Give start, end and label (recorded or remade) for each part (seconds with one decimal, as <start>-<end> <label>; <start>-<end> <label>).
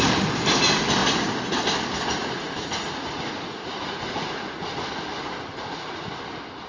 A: 0.0-2.2 recorded; 2.2-4.9 remade; 4.9-5.5 recorded; 5.5-6.1 remade; 6.1-6.7 recorded